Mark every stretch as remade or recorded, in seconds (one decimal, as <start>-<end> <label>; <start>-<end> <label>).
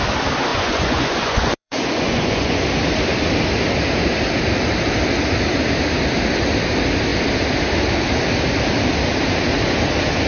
0.0-0.5 recorded; 0.5-2.6 remade; 2.6-10.3 recorded